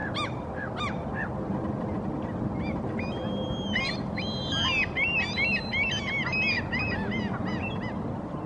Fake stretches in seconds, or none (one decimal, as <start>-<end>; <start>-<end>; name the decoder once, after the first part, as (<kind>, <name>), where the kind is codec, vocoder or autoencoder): none